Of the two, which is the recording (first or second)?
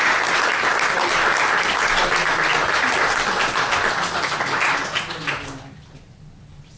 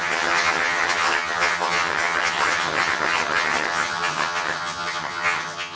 first